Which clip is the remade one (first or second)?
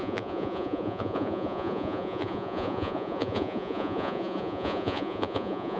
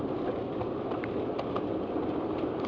first